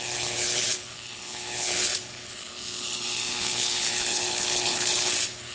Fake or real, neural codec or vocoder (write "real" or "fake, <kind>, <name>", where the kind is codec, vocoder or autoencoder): fake, codec, HILCodec